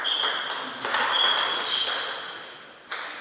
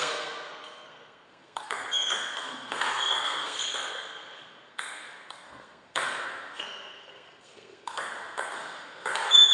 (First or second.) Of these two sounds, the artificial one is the second